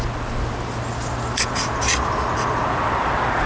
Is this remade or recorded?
recorded